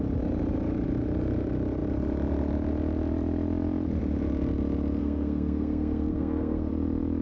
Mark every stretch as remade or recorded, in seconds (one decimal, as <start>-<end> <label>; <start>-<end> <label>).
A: 0.0-5.0 recorded; 5.0-6.7 remade; 6.7-7.2 recorded